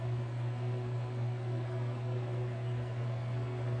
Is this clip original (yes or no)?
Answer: no